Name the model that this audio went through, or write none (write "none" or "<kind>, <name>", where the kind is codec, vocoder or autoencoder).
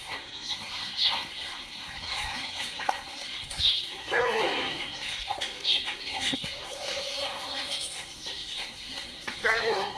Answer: codec, SNAC